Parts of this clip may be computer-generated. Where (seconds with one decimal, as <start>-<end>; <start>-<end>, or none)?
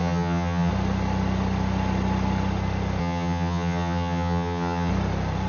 0.0-0.7; 3.0-4.9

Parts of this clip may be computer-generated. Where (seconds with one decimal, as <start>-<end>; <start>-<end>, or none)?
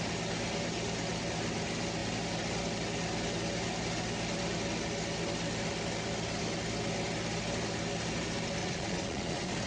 8.6-9.7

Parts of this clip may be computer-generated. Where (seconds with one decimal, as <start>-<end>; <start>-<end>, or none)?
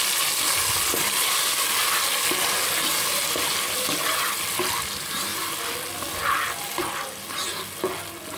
none